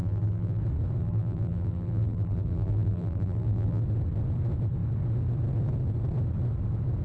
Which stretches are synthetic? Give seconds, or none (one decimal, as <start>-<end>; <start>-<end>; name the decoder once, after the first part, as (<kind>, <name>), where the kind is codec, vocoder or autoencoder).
0.0-0.6 (vocoder, BigVGAN v2); 1.0-3.8